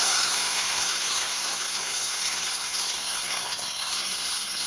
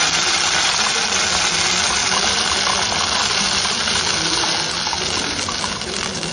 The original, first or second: second